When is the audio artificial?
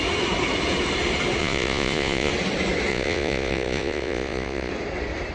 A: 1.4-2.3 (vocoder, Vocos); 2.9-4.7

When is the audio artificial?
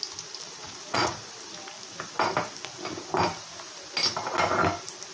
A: 0.6-1.3 (vocoder, Vocos)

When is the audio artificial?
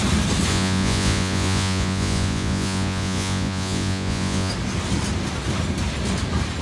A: 0.5-4.5 (vocoder, Vocos)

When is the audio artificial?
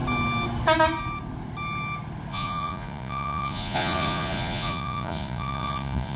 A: 2.3-6.2 (vocoder, Vocos)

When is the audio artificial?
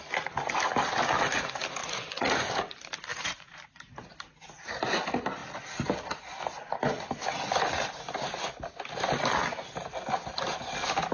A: 1.8-2.6 (vocoder, Vocos); 3.1-3.8